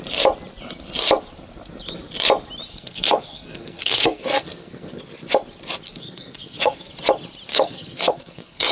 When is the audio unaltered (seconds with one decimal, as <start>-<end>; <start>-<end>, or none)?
0.0-2.7; 5.0-5.9; 6.9-7.5